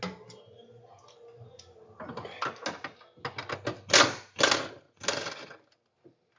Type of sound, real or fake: real